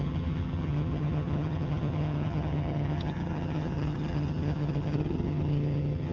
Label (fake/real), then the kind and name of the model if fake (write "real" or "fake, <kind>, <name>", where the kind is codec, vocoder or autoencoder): fake, vocoder, HiFi-GAN